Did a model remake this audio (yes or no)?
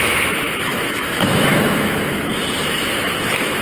yes